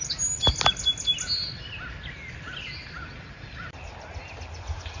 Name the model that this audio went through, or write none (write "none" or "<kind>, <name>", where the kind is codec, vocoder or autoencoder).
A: none